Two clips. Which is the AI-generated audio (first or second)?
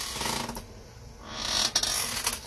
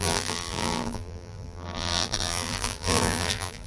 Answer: second